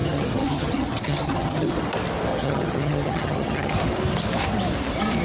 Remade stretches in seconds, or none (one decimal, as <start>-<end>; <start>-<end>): 0.0-1.7; 2.3-3.7